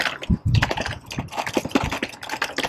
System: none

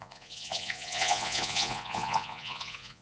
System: vocoder, Vocos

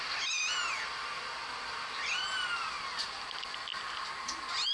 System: none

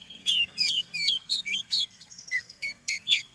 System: codec, SNAC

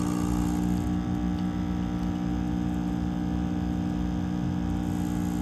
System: none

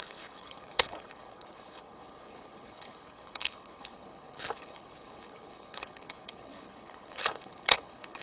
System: codec, HILCodec